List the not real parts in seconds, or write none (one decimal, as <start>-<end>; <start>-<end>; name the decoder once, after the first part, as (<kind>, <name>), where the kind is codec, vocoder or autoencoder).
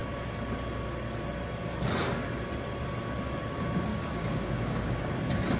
3.9-5.1 (codec, DAC)